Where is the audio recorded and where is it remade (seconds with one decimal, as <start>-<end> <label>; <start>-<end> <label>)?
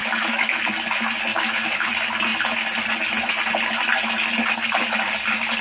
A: 0.0-0.6 remade; 0.6-1.3 recorded; 1.3-1.9 remade; 1.9-5.6 recorded